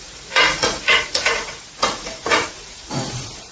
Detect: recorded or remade remade